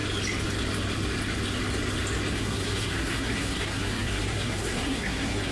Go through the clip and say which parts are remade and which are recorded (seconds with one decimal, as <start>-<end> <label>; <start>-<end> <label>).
0.0-2.3 recorded; 2.3-5.5 remade